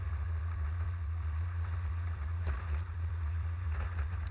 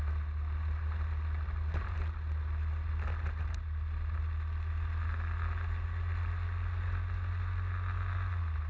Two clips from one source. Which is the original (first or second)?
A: second